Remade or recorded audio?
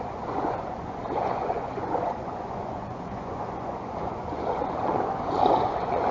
remade